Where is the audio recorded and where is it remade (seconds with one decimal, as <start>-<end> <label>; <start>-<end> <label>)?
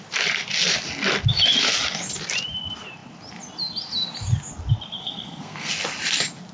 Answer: 0.0-5.0 recorded; 5.0-5.7 remade; 5.7-6.5 recorded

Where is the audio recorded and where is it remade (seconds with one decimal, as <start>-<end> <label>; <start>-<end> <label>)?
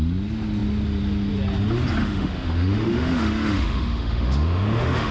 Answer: 0.0-2.0 recorded; 2.0-5.1 remade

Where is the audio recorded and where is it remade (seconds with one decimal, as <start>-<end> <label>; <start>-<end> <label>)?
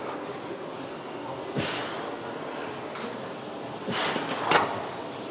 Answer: 0.0-0.9 recorded; 0.9-1.4 remade; 1.4-5.3 recorded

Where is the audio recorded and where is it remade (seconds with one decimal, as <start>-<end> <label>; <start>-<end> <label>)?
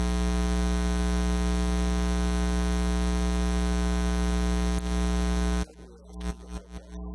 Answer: 0.0-6.0 recorded; 6.0-6.6 remade; 6.6-7.1 recorded